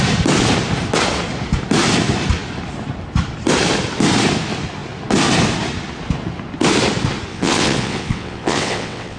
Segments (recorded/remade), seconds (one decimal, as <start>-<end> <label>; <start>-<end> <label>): 0.0-7.3 recorded; 7.3-9.2 remade